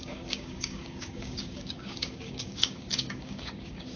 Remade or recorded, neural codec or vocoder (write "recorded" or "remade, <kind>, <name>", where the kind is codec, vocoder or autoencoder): remade, codec, DAC